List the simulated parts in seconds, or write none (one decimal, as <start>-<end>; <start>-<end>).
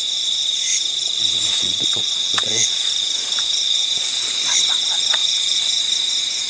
0.5-4.4; 5.2-5.9